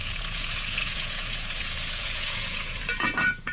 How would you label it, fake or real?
fake